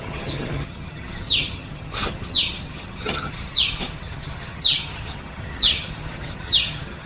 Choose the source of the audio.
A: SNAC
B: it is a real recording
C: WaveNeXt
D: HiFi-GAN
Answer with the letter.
D